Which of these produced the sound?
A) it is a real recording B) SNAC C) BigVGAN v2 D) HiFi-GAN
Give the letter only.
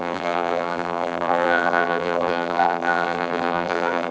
C